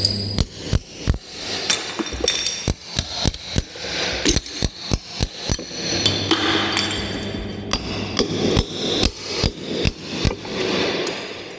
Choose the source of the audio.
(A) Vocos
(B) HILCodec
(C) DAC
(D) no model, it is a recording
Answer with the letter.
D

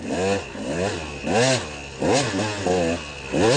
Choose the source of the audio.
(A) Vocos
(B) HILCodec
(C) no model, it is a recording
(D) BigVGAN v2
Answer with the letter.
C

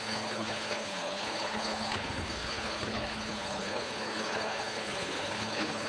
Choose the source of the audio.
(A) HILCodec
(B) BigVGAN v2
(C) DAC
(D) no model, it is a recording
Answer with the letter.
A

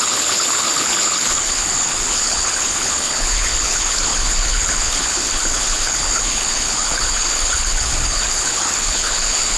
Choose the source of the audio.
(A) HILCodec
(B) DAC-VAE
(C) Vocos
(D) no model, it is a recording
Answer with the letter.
A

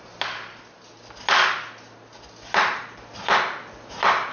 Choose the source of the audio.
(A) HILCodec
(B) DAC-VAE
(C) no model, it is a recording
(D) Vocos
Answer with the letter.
C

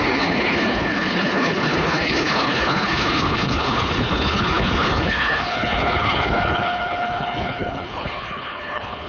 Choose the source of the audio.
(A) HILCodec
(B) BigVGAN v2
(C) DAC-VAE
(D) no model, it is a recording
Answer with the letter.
A